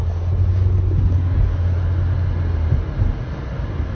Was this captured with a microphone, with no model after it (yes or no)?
yes